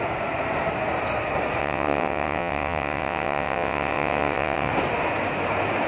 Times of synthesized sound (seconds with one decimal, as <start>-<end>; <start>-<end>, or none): 1.6-4.7